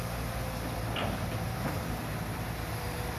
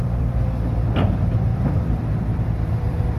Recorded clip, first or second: first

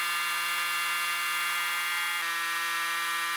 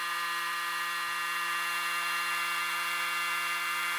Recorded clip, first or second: first